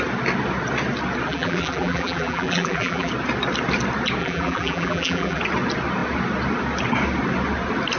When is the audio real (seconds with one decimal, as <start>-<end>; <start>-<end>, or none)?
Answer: 0.0-1.3; 3.1-4.2; 5.4-8.0